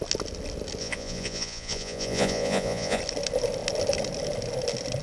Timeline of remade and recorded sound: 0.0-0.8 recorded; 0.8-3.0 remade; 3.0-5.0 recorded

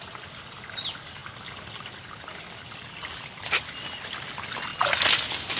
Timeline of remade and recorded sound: 0.0-5.6 recorded

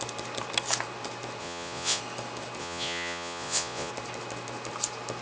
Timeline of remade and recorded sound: 0.0-1.4 recorded; 1.4-2.0 remade; 2.0-2.6 recorded; 2.6-3.9 remade; 3.9-5.2 recorded

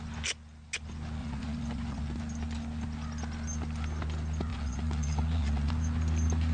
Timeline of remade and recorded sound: 0.0-1.2 recorded; 1.2-2.2 remade; 2.2-4.5 recorded; 4.5-5.7 remade; 5.7-6.5 recorded

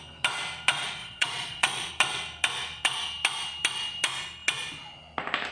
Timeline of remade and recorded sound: 0.0-1.0 recorded; 1.0-1.9 remade; 1.9-5.5 recorded

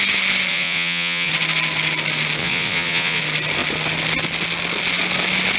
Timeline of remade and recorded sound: 0.0-0.5 recorded; 0.5-1.3 remade; 1.3-2.4 recorded; 2.4-3.2 remade; 3.2-5.6 recorded